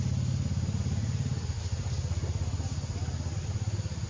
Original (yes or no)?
yes